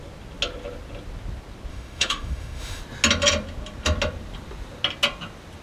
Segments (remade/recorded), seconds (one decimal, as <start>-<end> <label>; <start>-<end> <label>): 0.0-1.7 recorded; 1.7-2.8 remade; 2.8-5.6 recorded